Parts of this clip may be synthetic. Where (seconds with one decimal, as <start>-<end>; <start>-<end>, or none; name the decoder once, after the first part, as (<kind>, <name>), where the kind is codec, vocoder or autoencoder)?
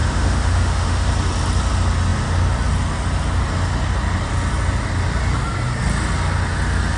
0.0-1.1 (autoencoder, DAC-VAE)